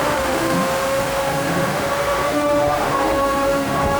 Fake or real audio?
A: fake